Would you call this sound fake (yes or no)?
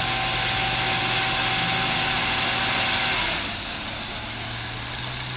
no